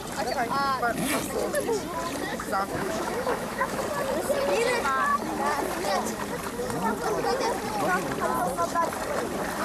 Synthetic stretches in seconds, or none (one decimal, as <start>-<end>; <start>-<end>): 2.3-3.8